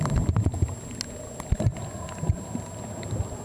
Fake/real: real